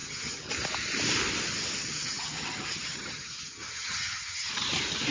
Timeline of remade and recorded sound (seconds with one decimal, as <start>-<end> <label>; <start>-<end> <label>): 0.0-0.5 remade; 0.5-1.8 recorded; 1.8-4.5 remade; 4.5-5.1 recorded